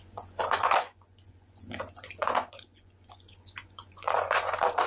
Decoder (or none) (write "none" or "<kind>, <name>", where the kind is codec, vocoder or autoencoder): vocoder, Vocos